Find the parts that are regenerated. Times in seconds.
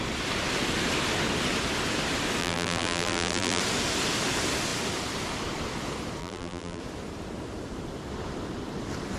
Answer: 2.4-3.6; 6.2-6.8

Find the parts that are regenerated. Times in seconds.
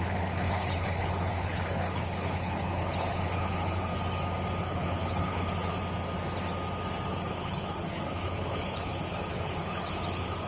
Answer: 0.0-3.9; 4.6-5.8; 7.1-10.5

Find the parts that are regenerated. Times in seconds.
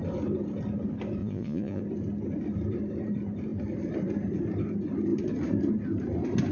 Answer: 1.2-1.8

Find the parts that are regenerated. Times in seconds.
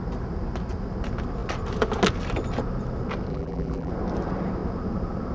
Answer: 3.3-3.9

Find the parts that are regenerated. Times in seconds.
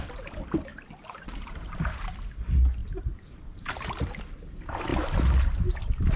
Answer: 0.7-2.1; 2.8-3.7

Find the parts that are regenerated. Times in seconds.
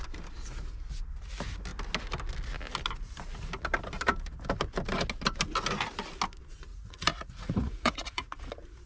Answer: 6.7-8.5